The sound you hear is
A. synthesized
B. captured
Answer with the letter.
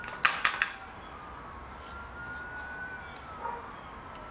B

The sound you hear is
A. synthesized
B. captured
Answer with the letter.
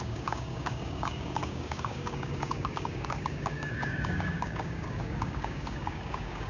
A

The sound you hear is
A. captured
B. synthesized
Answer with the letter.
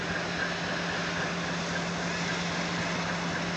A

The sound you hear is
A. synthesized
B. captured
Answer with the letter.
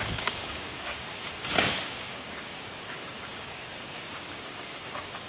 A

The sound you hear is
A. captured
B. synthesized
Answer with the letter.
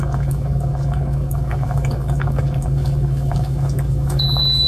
B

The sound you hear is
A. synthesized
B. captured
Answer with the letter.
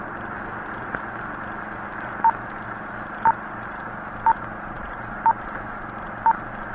B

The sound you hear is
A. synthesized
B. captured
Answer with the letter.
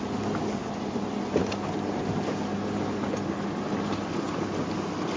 B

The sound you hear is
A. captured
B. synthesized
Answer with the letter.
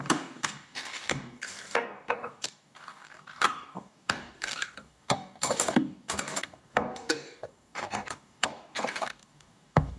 B